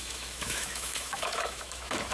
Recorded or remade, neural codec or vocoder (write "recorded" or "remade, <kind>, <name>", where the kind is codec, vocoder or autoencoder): remade, autoencoder, DAC-VAE